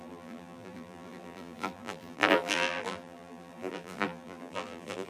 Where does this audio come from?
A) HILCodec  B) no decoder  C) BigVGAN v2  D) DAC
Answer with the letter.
C